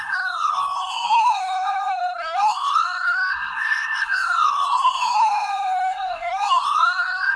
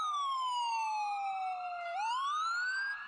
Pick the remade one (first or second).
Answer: first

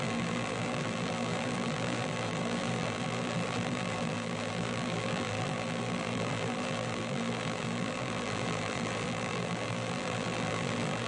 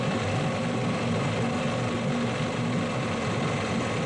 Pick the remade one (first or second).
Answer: first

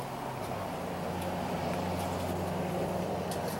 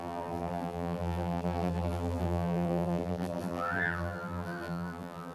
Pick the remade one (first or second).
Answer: second